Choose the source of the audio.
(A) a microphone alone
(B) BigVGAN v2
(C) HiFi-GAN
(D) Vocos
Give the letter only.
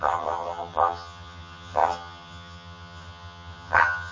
C